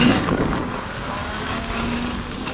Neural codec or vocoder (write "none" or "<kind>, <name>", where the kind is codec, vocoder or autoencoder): codec, DAC